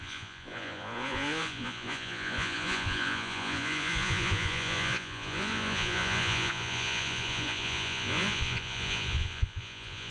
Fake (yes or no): yes